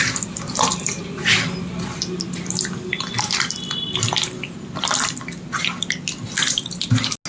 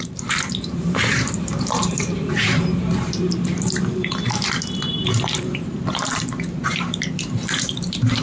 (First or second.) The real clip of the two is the first